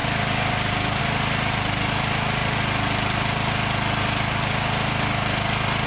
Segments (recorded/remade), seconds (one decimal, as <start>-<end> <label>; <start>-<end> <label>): 0.0-5.9 recorded